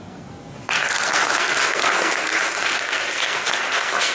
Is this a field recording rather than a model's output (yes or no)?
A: no